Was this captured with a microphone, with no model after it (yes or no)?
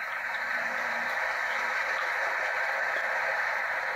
no